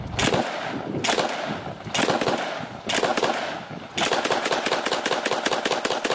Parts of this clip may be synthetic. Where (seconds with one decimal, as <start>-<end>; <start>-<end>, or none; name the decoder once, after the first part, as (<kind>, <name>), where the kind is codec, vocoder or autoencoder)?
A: none